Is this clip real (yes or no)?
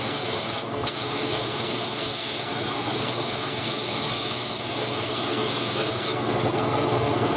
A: no